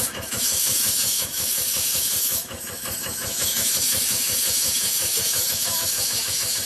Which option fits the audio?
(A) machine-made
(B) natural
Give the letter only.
A